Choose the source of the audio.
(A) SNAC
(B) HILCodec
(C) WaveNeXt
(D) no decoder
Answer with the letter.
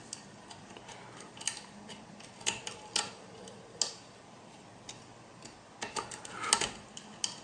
D